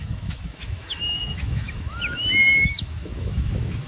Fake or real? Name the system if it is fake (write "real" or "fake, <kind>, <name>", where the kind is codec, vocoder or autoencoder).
fake, autoencoder, DAC-VAE